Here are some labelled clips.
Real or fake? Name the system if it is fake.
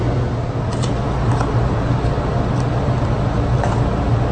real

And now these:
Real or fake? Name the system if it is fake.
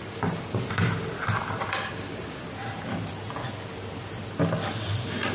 real